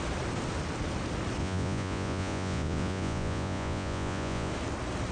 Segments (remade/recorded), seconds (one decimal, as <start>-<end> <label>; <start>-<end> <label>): 0.0-1.4 recorded; 1.4-4.5 remade; 4.5-5.1 recorded